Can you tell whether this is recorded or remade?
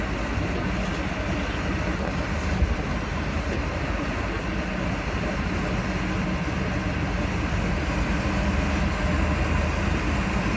recorded